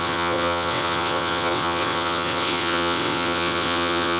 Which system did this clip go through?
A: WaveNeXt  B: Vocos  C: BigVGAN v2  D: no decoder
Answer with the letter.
A